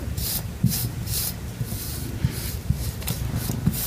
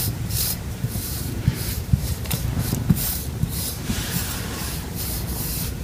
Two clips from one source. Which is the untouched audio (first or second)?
first